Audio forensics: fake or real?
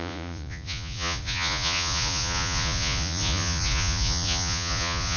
fake